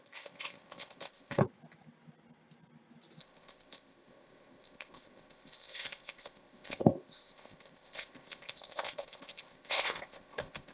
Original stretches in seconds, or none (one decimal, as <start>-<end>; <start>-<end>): 1.4-3.2